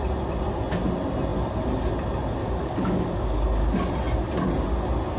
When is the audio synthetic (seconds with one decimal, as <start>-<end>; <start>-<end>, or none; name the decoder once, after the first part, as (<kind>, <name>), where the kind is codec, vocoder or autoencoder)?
2.4-3.9 (codec, DAC)